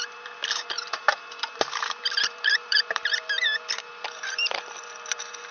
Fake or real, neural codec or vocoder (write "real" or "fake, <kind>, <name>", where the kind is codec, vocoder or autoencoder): fake, vocoder, BigVGAN v2